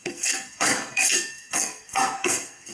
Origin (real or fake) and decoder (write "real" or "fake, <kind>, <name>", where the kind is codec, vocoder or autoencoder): fake, codec, SNAC